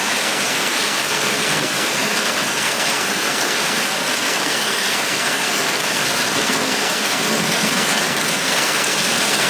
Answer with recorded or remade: remade